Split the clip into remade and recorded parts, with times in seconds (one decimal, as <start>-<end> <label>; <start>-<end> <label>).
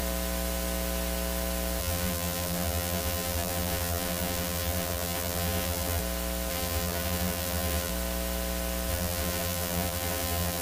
0.0-1.8 recorded; 1.8-6.0 remade; 6.0-6.5 recorded; 6.5-7.9 remade; 7.9-8.9 recorded; 8.9-10.6 remade